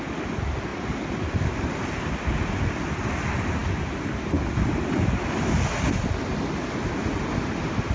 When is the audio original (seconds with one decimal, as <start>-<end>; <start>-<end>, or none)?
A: 0.0-7.9